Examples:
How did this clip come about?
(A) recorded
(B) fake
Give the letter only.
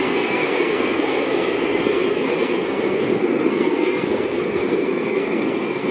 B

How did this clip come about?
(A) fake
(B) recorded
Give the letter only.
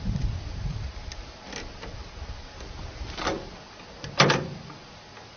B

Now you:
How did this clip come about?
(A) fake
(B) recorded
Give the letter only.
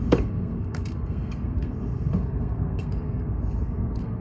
A